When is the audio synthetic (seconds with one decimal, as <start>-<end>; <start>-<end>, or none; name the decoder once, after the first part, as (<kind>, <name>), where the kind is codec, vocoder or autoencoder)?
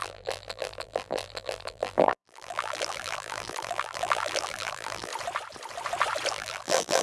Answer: 0.0-5.1 (vocoder, BigVGAN v2); 6.3-7.0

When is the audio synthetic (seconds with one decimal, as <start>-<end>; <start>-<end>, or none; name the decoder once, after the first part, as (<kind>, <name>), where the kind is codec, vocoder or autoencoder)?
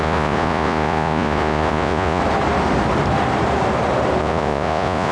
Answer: 0.0-2.2 (vocoder, Vocos); 4.2-5.1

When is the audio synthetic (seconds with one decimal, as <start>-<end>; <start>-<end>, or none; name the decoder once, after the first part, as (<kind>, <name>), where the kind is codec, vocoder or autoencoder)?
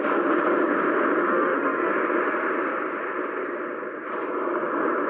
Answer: 1.3-1.9 (autoencoder, DAC-VAE)